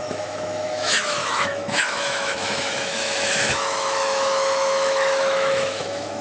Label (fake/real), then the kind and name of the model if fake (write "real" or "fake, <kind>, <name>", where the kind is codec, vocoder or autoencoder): fake, autoencoder, DAC-VAE